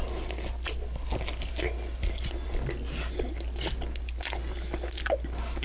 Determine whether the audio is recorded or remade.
recorded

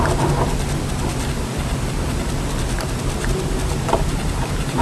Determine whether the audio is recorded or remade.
recorded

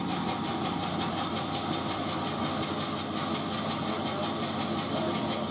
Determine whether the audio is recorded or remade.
recorded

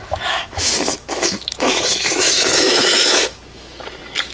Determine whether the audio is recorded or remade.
remade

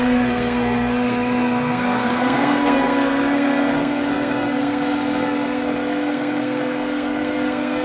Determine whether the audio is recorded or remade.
remade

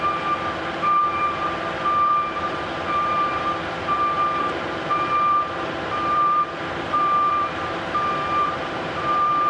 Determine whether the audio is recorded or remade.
remade